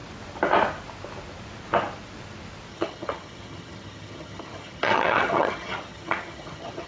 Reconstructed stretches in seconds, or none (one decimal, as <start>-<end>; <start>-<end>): 2.7-6.9